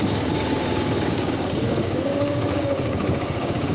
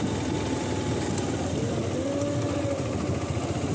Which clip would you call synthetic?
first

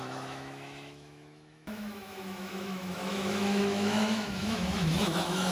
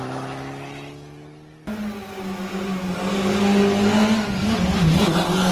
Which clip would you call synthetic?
first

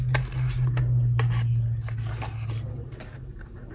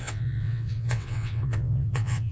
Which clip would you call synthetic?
second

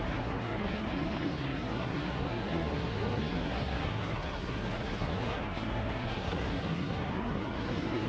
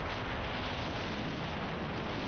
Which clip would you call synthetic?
first